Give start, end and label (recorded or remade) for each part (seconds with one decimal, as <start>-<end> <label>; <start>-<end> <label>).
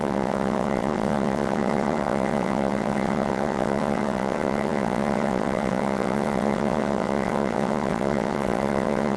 0.0-9.2 remade